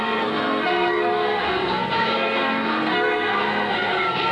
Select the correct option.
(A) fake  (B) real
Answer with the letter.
A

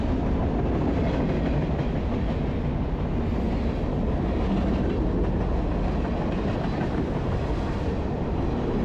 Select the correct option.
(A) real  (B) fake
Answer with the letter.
A